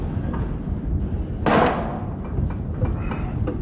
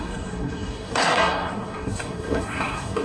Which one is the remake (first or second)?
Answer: second